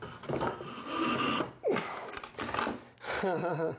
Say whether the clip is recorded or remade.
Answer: recorded